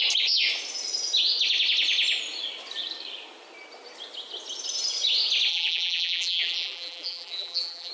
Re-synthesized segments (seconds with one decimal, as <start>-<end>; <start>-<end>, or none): 5.5-7.9